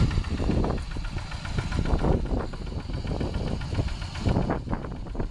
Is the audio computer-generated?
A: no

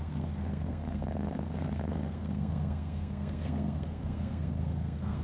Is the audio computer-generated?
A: yes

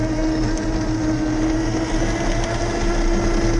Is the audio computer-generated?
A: no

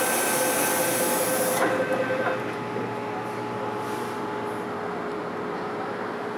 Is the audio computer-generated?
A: no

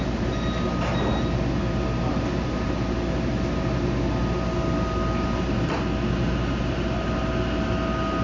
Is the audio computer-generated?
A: no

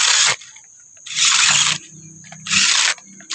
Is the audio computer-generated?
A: no